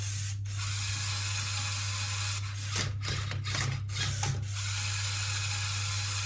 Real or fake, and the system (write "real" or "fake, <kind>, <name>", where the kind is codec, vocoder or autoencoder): real